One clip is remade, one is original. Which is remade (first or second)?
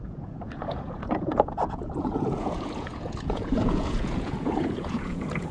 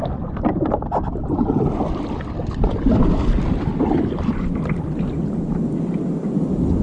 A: first